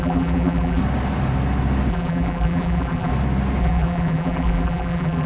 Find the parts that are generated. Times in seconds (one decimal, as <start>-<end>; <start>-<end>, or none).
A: 0.0-0.8; 1.9-3.1; 3.6-5.3